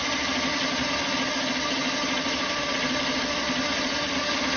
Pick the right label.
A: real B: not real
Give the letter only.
A